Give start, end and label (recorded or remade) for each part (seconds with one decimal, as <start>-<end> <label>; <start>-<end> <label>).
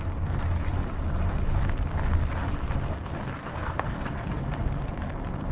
0.0-3.5 recorded; 3.5-4.4 remade; 4.4-5.5 recorded